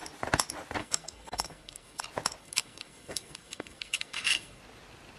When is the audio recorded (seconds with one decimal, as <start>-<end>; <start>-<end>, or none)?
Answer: 0.0-0.8; 2.0-2.4; 4.6-5.2